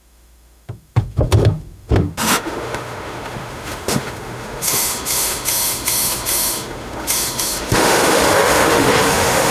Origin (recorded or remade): remade